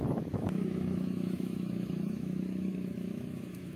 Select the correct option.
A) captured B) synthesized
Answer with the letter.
B